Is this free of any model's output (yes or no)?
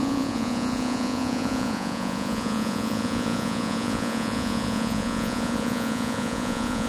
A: no